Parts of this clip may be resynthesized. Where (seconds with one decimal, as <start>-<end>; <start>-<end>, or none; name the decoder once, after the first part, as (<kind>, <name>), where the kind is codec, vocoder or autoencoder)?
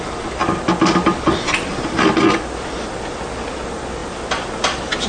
none